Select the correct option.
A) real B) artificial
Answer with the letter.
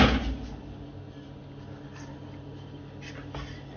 A